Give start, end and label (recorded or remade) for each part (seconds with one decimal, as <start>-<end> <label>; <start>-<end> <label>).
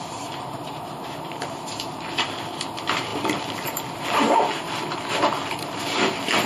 0.0-6.5 remade